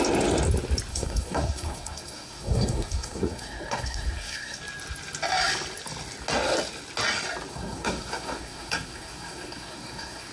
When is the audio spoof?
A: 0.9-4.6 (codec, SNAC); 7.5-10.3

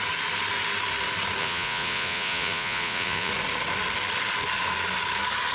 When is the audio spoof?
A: 1.4-3.3 (vocoder, Vocos)

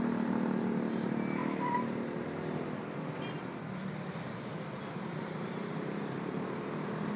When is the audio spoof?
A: none

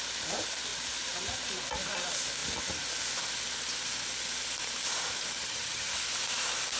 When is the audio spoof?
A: 5.4-5.9 (vocoder, HiFi-GAN)